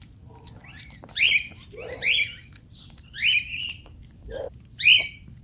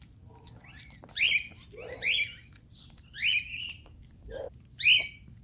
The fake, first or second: first